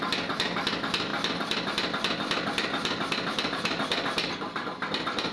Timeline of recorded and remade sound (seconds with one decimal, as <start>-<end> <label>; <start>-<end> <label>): 0.0-5.3 recorded